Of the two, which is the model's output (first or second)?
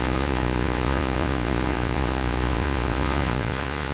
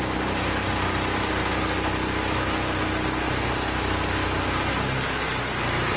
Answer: first